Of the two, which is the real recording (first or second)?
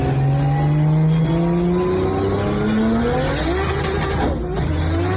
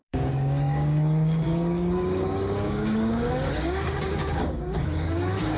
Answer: first